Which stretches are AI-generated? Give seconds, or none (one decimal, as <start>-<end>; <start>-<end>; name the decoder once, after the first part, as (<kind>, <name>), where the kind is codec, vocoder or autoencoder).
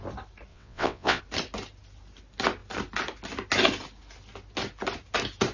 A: 0.5-1.2 (vocoder, WaveNeXt)